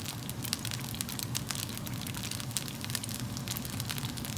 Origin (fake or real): real